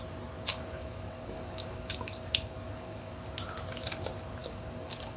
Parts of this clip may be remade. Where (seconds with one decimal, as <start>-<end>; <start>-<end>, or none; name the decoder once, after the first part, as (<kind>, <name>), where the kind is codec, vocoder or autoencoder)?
0.5-3.2 (codec, DAC); 4.4-5.2